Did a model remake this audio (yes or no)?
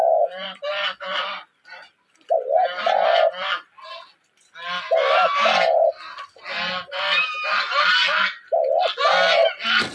no